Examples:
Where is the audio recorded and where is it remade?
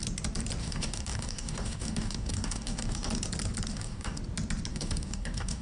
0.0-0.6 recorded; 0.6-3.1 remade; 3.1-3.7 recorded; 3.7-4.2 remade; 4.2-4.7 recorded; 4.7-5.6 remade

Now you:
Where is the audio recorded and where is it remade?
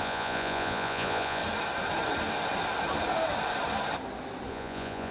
0.0-1.4 remade; 1.4-4.5 recorded; 4.5-5.1 remade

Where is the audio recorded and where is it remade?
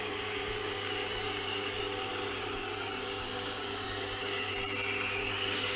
0.0-2.1 remade; 2.1-2.6 recorded; 2.6-4.5 remade; 4.5-5.1 recorded; 5.1-5.8 remade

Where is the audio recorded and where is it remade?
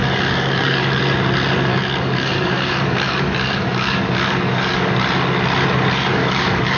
0.0-1.0 remade; 1.0-1.7 recorded; 1.7-4.9 remade; 4.9-6.1 recorded; 6.1-6.8 remade